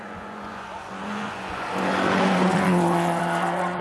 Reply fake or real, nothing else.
fake